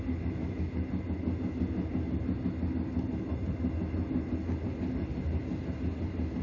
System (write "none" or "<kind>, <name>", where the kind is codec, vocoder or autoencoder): none